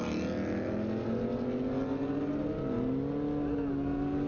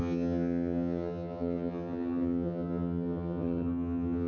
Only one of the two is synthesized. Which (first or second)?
second